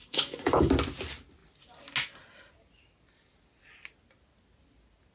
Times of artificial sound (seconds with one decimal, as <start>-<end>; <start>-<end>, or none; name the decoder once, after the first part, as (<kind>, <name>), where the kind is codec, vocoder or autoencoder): 0.0-0.7 (codec, DAC)